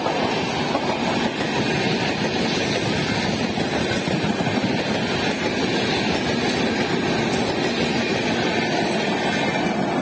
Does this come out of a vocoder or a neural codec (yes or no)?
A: no